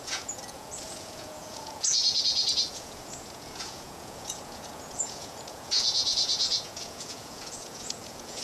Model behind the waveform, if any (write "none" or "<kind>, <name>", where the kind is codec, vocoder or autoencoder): vocoder, Vocos